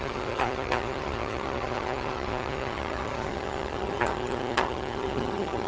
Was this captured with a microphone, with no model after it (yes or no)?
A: no